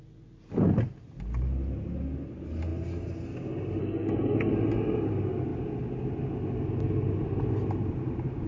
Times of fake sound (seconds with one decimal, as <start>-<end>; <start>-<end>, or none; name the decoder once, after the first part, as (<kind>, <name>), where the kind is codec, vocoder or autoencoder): 3.8-4.5 (codec, SNAC)